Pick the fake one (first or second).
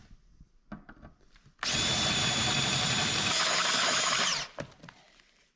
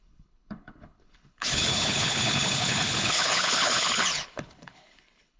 second